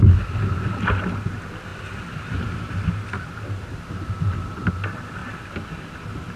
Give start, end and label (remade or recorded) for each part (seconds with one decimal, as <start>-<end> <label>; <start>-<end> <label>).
0.0-6.4 recorded